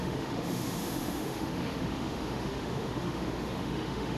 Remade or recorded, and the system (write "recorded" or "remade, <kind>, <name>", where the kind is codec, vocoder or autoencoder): remade, autoencoder, DAC-VAE